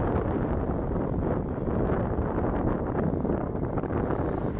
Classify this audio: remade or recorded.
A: recorded